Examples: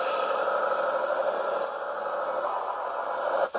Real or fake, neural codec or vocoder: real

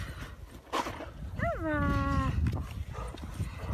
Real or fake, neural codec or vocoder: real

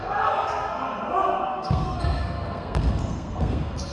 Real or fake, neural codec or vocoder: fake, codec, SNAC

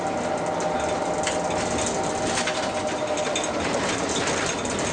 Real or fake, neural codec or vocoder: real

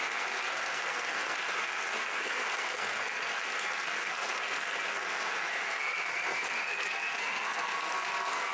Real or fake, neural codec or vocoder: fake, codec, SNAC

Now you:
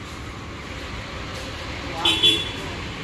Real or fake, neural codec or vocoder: real